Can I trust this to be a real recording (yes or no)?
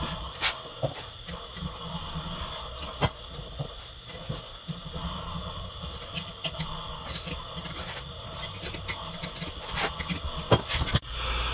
yes